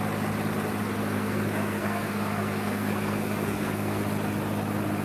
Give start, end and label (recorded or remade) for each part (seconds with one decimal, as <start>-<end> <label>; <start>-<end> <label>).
0.0-1.0 recorded; 1.0-4.0 remade; 4.0-5.0 recorded